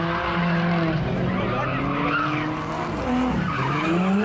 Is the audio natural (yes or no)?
yes